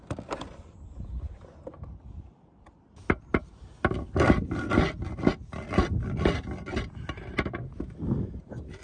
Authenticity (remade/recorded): recorded